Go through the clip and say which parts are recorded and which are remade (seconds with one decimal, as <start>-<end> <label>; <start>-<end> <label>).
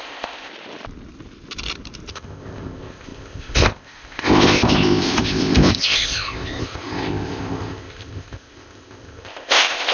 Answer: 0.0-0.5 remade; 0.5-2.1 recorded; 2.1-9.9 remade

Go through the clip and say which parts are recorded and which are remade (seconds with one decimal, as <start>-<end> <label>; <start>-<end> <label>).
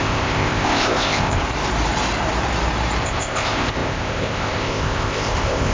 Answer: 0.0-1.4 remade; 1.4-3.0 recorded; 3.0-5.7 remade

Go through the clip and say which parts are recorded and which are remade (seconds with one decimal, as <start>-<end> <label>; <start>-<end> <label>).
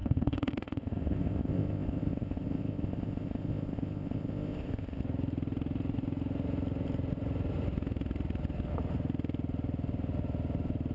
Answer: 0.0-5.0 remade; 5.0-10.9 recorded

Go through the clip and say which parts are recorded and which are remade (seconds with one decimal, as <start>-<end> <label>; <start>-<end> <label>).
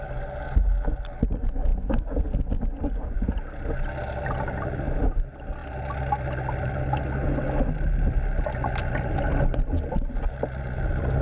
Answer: 0.0-11.2 recorded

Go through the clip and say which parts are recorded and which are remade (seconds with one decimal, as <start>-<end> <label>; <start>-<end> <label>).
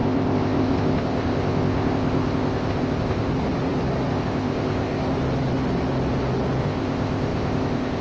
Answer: 0.0-3.3 remade; 3.3-4.1 recorded; 4.1-5.0 remade; 5.0-6.6 recorded; 6.6-8.0 remade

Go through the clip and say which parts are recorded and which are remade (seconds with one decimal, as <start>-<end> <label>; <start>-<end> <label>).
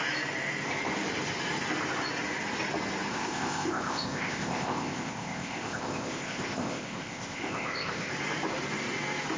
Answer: 0.0-3.1 recorded; 3.1-8.1 remade; 8.1-9.4 recorded